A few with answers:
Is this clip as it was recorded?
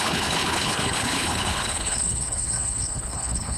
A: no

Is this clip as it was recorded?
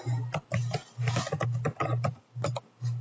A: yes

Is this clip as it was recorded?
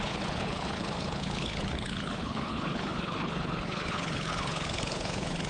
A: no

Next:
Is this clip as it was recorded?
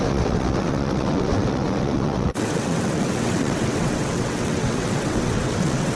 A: no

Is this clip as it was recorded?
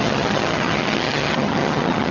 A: no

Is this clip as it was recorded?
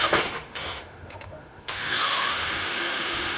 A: no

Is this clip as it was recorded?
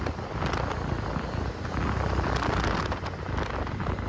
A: yes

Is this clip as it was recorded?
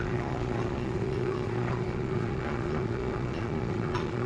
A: no